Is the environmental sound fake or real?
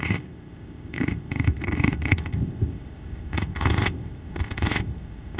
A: fake